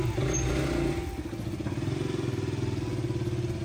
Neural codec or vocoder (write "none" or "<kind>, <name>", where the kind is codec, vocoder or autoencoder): none